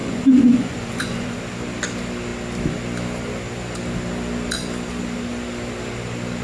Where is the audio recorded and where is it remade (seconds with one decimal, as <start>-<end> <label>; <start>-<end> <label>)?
0.0-1.4 remade; 1.4-6.4 recorded